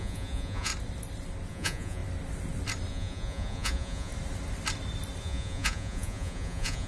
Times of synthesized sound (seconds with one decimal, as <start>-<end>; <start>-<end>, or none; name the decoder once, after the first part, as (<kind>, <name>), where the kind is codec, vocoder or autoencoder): 0.0-0.7 (vocoder, Vocos); 1.5-2.0; 2.9-4.1; 5.2-6.9